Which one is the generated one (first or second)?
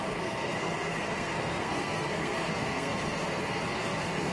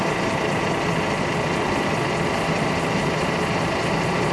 first